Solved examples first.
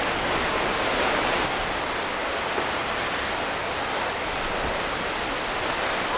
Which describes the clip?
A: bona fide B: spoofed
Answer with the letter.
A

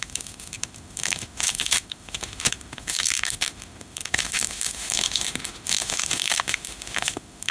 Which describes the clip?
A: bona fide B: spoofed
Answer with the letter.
B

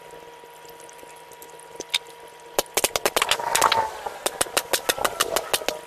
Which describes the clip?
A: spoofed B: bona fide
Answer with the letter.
B